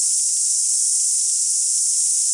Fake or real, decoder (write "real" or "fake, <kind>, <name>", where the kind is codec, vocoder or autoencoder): real